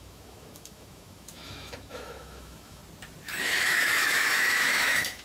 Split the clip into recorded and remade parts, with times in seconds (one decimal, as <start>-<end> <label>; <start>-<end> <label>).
0.0-2.8 remade; 2.8-3.4 recorded; 3.4-5.2 remade